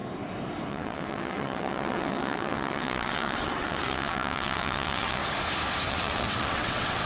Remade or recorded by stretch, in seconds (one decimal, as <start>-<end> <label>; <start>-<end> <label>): 0.0-0.7 recorded; 0.7-5.2 remade; 5.2-5.9 recorded; 5.9-7.1 remade